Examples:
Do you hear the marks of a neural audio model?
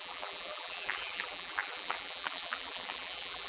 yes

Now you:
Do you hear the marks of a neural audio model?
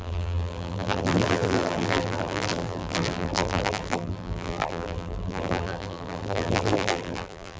yes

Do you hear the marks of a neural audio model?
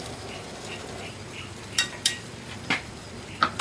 yes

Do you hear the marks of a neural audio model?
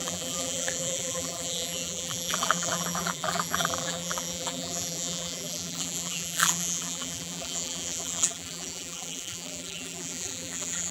yes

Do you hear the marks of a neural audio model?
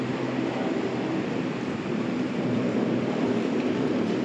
yes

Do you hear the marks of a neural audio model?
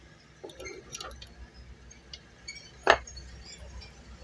no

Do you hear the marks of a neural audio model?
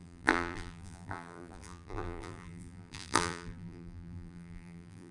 yes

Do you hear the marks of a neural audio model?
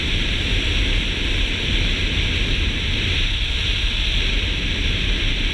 no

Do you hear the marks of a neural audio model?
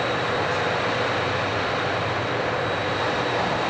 no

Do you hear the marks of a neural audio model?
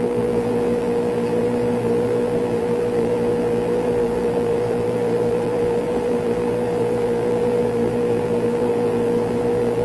yes